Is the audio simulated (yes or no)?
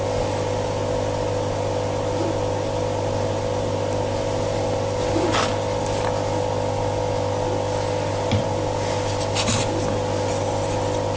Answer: no